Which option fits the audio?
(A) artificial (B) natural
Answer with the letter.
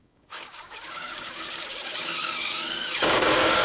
A